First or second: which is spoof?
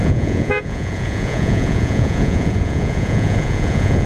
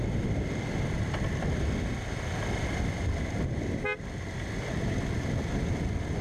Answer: first